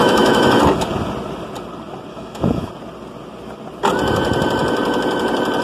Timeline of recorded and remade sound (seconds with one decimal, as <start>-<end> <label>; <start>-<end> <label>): 0.0-0.6 remade; 0.6-2.1 recorded; 2.1-2.7 remade; 2.7-5.6 recorded